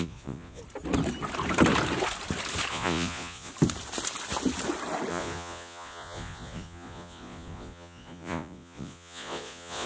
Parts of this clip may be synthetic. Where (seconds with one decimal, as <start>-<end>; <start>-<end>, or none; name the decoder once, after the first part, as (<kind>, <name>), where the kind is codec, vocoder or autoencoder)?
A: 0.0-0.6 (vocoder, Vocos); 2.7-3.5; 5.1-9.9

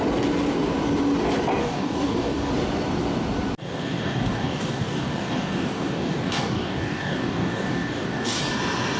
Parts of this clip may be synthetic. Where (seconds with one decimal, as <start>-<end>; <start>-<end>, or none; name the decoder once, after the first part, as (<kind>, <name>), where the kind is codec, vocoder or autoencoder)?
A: 1.6-2.5 (codec, DAC); 3.6-8.4

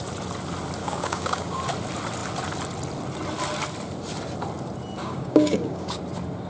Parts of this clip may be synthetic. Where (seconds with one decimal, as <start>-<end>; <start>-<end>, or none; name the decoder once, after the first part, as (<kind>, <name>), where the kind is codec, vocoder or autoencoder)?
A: 0.8-1.6 (codec, DAC); 5.0-6.0